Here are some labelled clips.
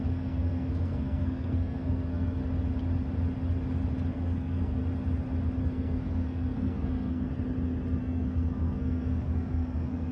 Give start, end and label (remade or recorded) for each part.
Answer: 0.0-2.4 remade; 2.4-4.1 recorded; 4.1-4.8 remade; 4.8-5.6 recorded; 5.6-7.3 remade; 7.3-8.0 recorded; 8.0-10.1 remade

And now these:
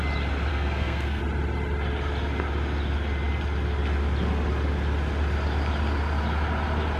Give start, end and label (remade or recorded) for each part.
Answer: 0.0-0.5 recorded; 0.5-1.2 remade; 1.2-7.0 recorded

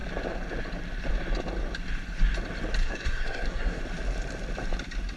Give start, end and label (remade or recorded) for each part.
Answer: 0.0-2.8 recorded; 2.8-3.8 remade; 3.8-5.2 recorded

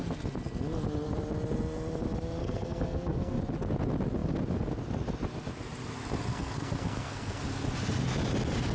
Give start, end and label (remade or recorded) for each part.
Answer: 0.0-2.4 recorded; 2.4-3.4 remade; 3.4-6.3 recorded; 6.3-7.4 remade; 7.4-8.7 recorded